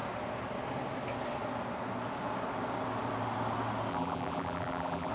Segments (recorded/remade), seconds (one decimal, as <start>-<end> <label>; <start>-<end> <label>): 0.0-3.9 recorded; 3.9-5.1 remade